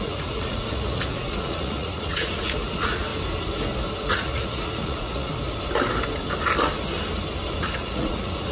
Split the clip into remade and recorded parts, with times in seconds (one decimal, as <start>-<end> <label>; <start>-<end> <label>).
0.0-3.1 remade; 3.1-4.1 recorded; 4.1-5.3 remade; 5.3-7.6 recorded; 7.6-8.5 remade